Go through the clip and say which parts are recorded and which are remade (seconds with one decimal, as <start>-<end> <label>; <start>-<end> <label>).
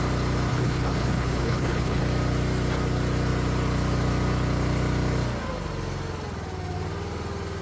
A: 0.0-0.5 recorded; 0.5-2.0 remade; 2.0-7.6 recorded